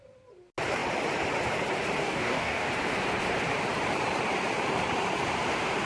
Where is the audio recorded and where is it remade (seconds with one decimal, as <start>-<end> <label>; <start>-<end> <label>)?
0.0-2.0 recorded; 2.0-2.7 remade; 2.7-5.9 recorded